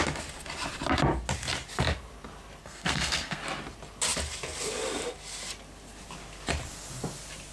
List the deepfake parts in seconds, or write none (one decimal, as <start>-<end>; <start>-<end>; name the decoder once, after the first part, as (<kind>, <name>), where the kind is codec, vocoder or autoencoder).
2.6-3.4 (codec, SNAC)